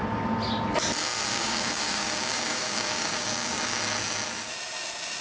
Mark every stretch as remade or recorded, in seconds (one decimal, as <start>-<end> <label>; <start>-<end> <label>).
0.0-1.3 recorded; 1.3-3.8 remade; 3.8-5.2 recorded